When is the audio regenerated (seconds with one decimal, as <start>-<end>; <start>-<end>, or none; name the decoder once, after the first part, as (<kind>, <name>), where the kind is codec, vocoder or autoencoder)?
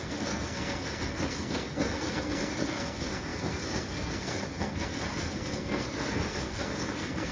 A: 0.0-7.3 (codec, SNAC)